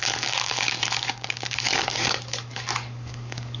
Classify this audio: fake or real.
fake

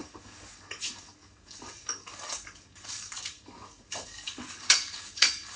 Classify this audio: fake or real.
fake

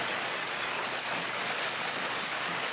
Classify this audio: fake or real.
fake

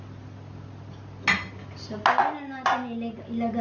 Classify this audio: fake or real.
real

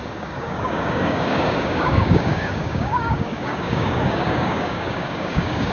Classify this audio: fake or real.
fake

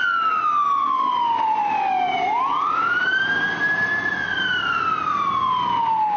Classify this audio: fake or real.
real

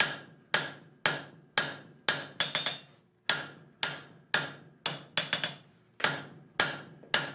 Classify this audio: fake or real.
real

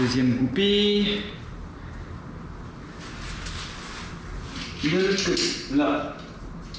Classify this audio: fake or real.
real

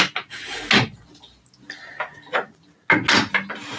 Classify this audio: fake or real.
real